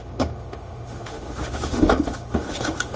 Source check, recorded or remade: remade